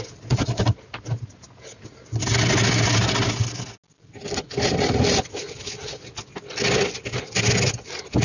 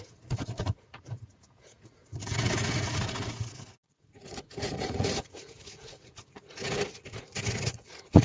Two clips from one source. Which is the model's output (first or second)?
second